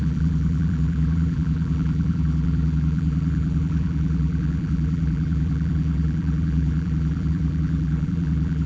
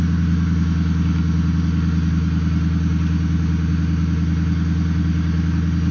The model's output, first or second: first